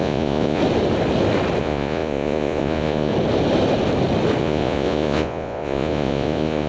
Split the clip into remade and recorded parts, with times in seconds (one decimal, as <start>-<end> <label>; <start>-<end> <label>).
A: 0.0-0.6 remade; 0.6-1.6 recorded; 1.6-3.1 remade; 3.1-4.4 recorded; 4.4-6.7 remade